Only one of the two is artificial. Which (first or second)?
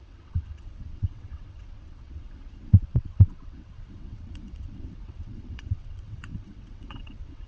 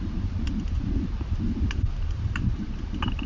first